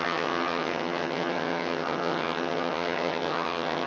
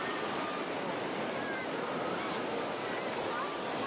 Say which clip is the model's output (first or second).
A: first